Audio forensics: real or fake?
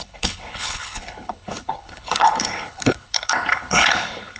fake